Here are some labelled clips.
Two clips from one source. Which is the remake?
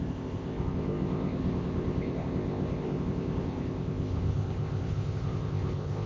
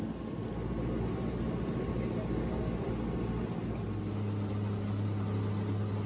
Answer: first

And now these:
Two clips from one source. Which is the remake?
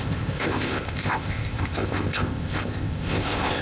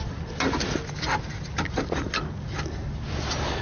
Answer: first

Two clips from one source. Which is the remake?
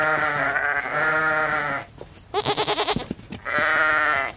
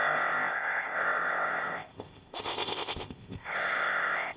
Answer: second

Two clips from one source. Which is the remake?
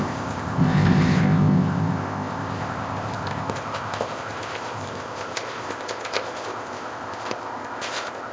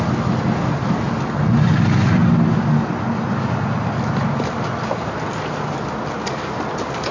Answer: first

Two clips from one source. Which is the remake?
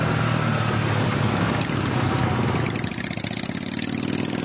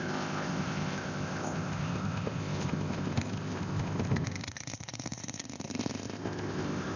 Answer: second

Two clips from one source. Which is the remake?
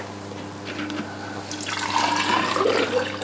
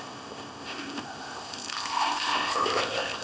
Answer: second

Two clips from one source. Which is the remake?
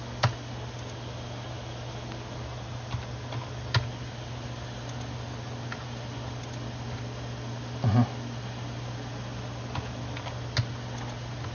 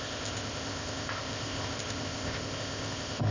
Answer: second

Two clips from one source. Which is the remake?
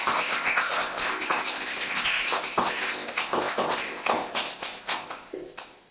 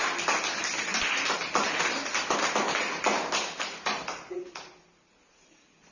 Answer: first